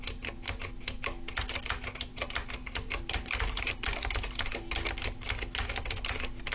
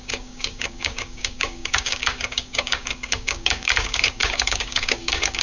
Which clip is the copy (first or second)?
second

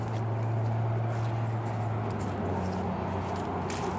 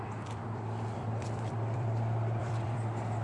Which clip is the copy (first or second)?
second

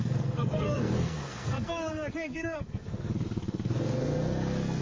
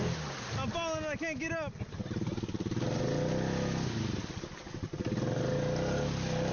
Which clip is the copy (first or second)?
first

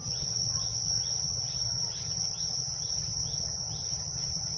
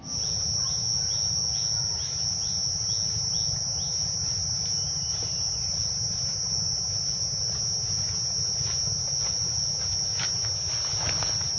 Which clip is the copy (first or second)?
first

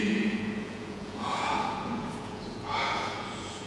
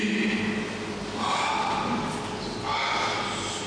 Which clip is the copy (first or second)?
first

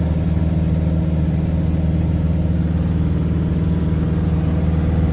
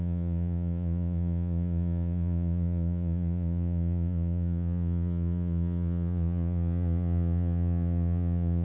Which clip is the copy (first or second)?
second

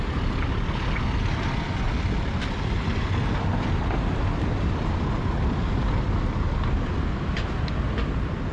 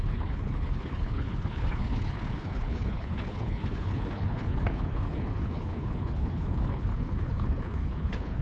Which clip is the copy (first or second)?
second